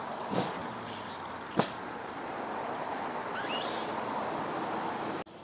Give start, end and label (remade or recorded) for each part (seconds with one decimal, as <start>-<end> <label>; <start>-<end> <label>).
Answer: 0.0-5.4 recorded